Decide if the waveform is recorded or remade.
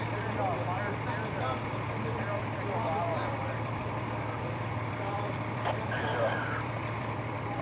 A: remade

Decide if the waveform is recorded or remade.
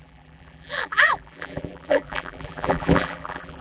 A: remade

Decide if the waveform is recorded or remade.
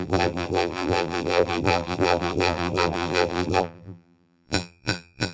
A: remade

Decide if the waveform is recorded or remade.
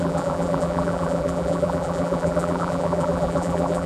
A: remade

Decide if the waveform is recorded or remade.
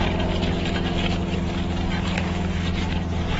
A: recorded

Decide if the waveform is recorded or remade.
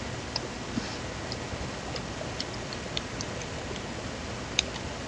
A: remade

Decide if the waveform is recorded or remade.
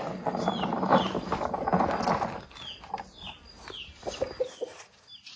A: recorded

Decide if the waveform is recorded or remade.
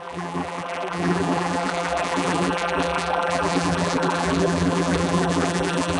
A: remade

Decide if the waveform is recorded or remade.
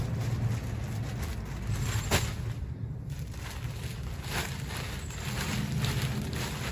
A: recorded